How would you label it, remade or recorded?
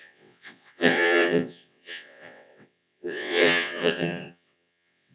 remade